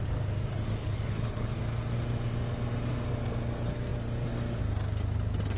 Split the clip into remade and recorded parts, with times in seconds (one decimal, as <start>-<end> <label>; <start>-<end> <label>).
0.0-0.8 recorded; 0.8-1.6 remade; 1.6-5.6 recorded